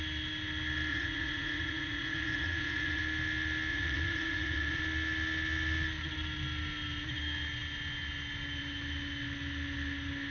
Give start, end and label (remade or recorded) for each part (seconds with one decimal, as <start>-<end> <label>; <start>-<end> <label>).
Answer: 0.0-0.9 recorded; 0.9-3.0 remade; 3.0-3.7 recorded; 3.7-4.8 remade; 4.8-10.3 recorded

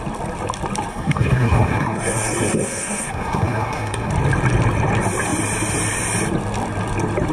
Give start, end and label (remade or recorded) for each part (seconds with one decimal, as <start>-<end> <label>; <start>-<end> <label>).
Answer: 0.0-0.9 recorded; 0.9-4.1 remade; 4.1-7.3 recorded

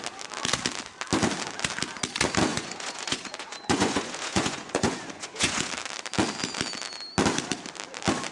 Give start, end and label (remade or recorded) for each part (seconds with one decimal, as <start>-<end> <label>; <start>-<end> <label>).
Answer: 0.0-2.5 recorded; 2.5-5.7 remade; 5.7-8.3 recorded